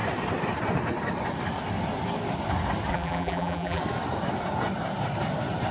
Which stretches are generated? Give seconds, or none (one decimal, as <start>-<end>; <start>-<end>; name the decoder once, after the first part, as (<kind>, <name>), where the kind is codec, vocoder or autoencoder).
2.9-3.8 (vocoder, BigVGAN v2)